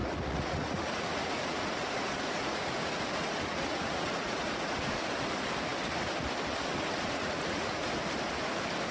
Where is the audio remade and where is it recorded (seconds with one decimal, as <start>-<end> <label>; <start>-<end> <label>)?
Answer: 0.0-5.1 remade; 5.1-6.7 recorded; 6.7-7.9 remade; 7.9-8.9 recorded